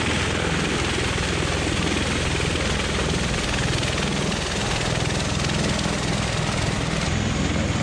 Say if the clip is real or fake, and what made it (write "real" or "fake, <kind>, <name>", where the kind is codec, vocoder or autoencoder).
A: real